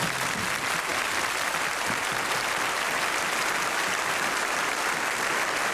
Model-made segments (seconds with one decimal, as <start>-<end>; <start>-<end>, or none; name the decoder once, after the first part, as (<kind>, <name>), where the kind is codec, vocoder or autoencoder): none